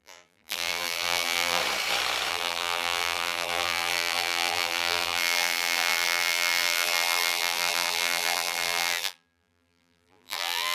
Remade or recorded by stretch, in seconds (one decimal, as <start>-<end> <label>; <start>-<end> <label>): 0.0-1.6 remade; 1.6-2.3 recorded; 2.3-10.7 remade